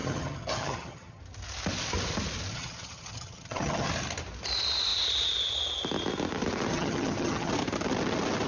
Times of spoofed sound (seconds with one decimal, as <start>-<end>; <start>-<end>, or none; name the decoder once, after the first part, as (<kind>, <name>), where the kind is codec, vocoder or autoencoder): 0.0-1.2 (vocoder, HiFi-GAN); 2.5-3.9; 6.7-7.5